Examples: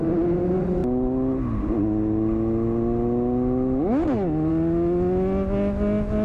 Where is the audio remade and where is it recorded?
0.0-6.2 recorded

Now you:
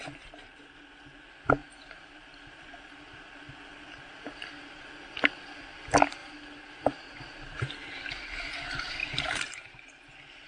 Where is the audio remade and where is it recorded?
0.0-1.6 recorded; 1.6-2.6 remade; 2.6-4.1 recorded; 4.1-4.9 remade; 4.9-6.2 recorded; 6.2-8.1 remade; 8.1-9.0 recorded; 9.0-10.0 remade; 10.0-10.5 recorded

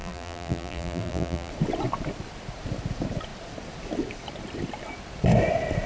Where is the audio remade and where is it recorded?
0.0-1.5 remade; 1.5-5.9 recorded

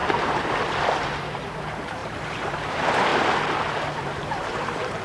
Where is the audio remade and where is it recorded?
0.0-3.1 remade; 3.1-4.0 recorded; 4.0-5.0 remade

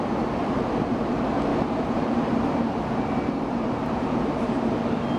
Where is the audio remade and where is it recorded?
0.0-0.4 recorded; 0.4-1.1 remade; 1.1-1.5 recorded; 1.5-4.6 remade; 4.6-5.2 recorded

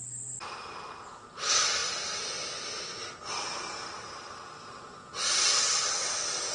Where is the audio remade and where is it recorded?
0.0-6.5 recorded